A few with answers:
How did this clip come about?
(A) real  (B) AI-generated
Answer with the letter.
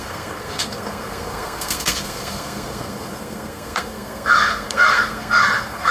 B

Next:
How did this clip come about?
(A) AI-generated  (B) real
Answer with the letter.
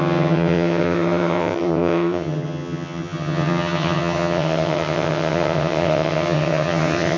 A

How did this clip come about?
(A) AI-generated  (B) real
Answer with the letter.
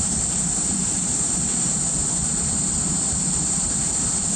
B